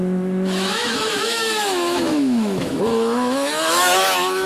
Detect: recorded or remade remade